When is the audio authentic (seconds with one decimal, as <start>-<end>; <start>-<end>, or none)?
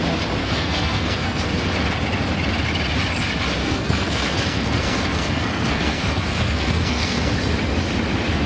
0.0-0.4; 1.4-3.6; 7.3-8.5